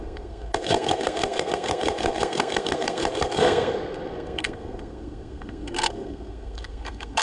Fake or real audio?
fake